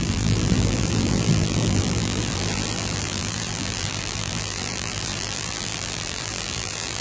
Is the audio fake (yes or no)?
yes